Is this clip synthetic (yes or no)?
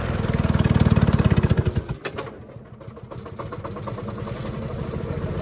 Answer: no